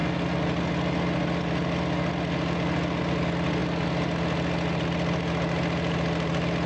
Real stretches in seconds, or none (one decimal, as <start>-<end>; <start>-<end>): 0.0-6.7

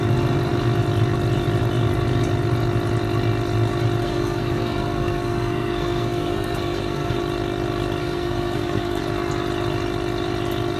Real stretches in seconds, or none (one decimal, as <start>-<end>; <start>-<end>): 0.0-4.0; 7.2-8.0; 9.0-10.8

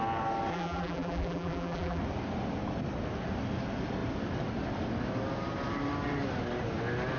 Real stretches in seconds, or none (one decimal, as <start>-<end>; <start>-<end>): 0.0-0.5; 2.0-7.2

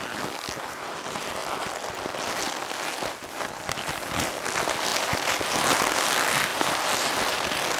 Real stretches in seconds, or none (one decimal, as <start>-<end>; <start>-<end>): 0.0-1.4; 1.9-6.5; 7.1-7.8

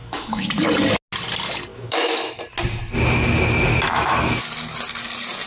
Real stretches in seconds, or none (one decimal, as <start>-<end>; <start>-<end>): 0.5-1.7; 2.3-3.9; 4.4-5.5

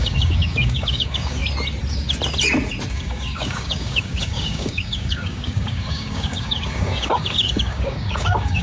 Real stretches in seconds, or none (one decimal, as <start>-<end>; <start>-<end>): 1.4-2.9

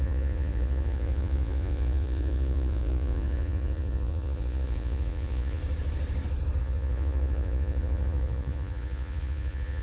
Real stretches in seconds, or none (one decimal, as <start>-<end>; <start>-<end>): 5.6-6.6

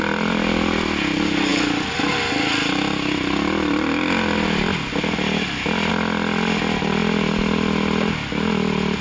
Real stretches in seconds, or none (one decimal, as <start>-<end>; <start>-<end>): 0.0-9.0